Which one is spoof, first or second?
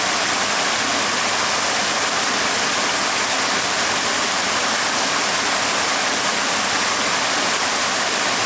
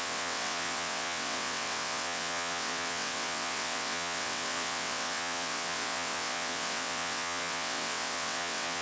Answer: second